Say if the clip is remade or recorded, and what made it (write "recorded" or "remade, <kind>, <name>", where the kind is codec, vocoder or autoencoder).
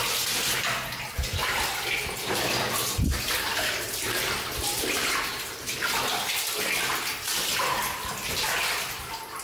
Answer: recorded